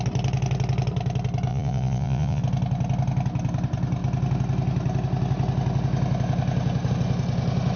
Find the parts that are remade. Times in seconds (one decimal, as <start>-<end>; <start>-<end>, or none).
1.5-2.4